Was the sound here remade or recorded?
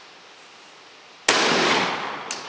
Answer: recorded